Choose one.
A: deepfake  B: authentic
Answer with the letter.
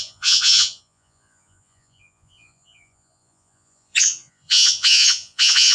A